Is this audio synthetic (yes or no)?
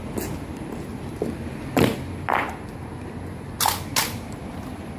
no